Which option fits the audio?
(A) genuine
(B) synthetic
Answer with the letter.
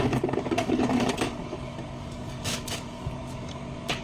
B